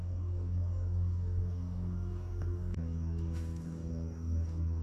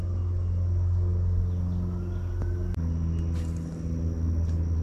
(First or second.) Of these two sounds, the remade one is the first